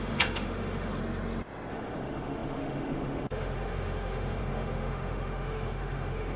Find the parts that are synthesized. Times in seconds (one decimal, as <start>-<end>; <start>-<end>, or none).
0.0-1.0; 1.7-6.4